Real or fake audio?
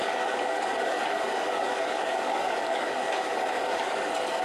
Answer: fake